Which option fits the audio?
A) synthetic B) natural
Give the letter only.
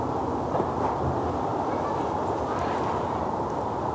B